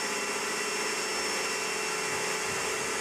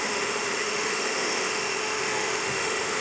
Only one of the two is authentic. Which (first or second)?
first